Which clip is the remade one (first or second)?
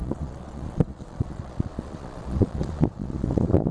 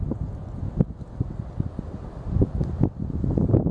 first